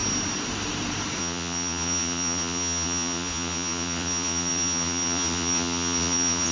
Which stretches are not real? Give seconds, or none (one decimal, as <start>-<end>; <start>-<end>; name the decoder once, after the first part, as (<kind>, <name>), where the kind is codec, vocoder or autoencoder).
1.2-6.5 (vocoder, Vocos)